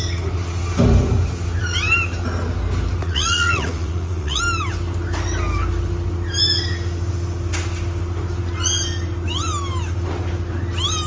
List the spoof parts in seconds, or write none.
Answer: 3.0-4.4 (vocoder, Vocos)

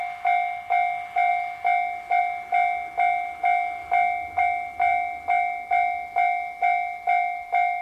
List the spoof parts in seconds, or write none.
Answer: none

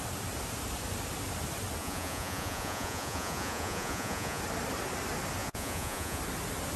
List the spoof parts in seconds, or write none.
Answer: 1.8-4.4 (vocoder, Vocos); 5.4-6.2

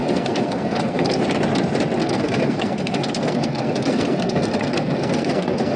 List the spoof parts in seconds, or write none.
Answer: 0.0-1.2 (codec, SNAC); 2.0-5.8

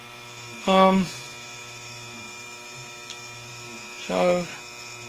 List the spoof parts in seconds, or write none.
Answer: 0.0-4.5 (autoencoder, DAC-VAE)

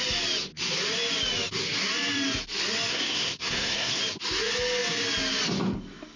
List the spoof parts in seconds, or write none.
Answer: 2.9-4.0 (codec, SNAC)